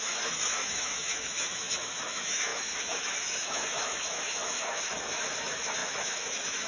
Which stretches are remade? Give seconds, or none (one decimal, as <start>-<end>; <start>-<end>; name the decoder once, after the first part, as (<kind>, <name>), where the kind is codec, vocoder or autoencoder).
0.0-6.7 (autoencoder, DAC-VAE)

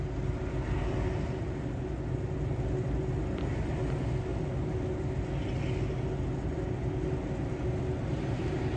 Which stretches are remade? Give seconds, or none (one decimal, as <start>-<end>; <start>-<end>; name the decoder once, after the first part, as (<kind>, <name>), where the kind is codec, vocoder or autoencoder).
none

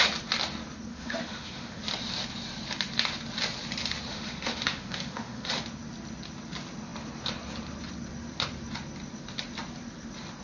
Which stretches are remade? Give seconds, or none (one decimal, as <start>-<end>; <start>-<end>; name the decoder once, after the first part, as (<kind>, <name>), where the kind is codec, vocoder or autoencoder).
0.9-1.8 (autoencoder, DAC-VAE); 4.1-5.5